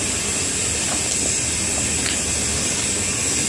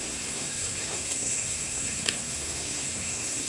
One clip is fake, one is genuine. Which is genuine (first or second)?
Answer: first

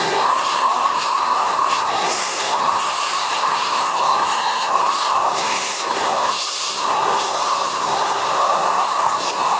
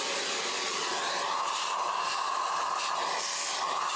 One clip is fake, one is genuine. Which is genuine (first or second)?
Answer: second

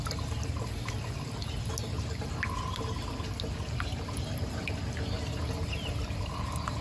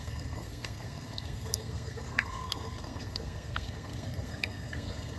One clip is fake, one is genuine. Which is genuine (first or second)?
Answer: first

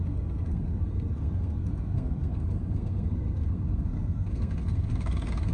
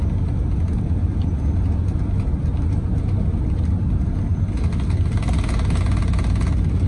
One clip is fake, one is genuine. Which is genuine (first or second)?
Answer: second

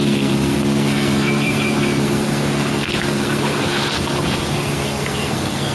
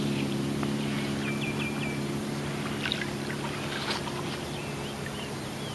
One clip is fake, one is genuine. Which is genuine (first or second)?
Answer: second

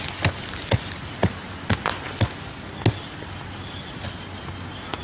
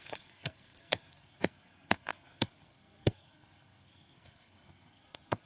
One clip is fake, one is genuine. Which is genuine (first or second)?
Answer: first